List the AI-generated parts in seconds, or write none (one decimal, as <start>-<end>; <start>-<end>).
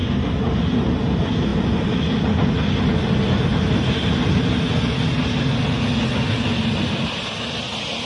none